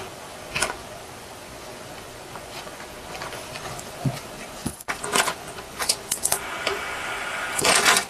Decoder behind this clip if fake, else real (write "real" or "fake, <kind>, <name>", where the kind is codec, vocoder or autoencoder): fake, vocoder, Vocos